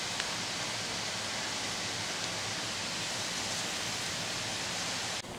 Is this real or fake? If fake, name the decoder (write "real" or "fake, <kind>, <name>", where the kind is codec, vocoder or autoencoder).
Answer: real